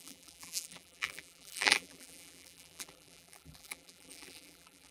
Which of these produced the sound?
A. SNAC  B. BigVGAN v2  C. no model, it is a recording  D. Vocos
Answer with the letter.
B